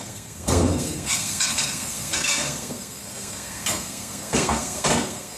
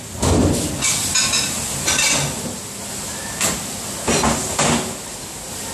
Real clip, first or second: second